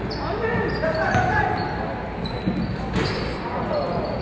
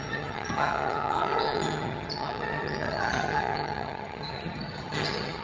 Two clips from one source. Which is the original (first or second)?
first